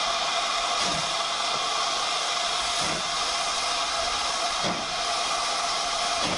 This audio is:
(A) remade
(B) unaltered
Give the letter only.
B